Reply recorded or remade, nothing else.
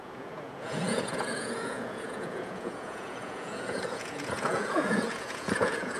remade